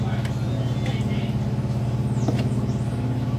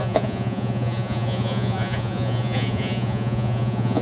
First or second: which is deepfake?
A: second